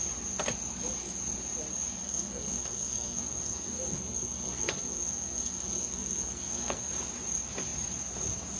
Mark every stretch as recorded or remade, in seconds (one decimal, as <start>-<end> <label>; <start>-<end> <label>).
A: 0.0-2.0 recorded; 2.0-6.9 remade; 6.9-8.6 recorded